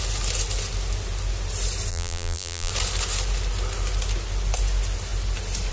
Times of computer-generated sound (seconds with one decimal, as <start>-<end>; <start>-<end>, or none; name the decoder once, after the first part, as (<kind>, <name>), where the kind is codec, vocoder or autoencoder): 1.9-2.7 (vocoder, BigVGAN v2)